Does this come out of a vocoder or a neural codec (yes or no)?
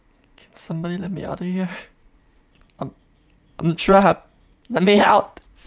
yes